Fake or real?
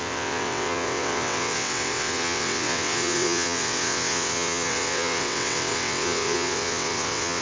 fake